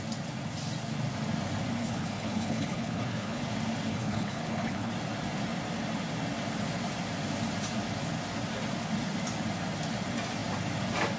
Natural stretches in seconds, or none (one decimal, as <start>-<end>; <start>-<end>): 0.0-1.8; 3.4-3.9; 4.9-11.2